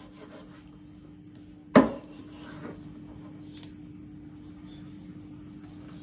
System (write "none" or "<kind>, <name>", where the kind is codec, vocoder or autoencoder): none